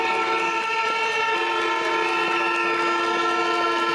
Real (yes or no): yes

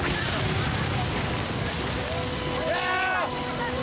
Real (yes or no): yes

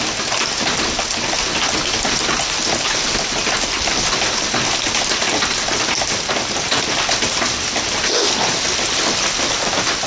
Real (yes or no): yes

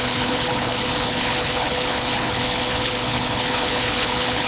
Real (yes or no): no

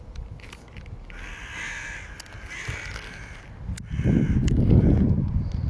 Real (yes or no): yes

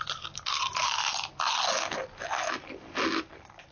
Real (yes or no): yes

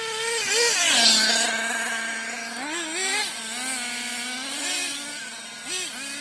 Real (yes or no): yes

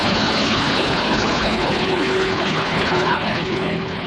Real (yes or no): no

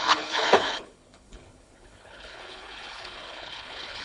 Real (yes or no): no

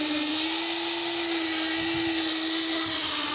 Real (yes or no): yes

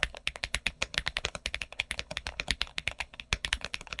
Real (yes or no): no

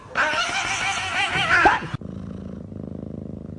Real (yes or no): yes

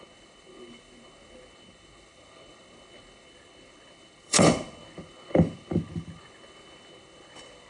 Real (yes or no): no